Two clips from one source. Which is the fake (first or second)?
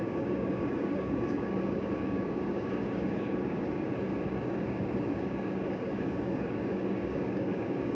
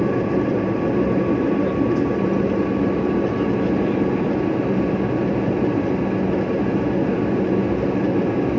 first